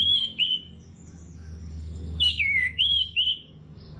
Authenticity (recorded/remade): remade